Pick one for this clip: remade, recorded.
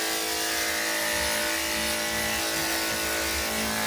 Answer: recorded